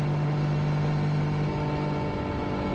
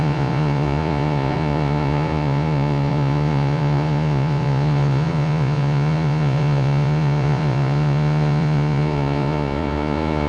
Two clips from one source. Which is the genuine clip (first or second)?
first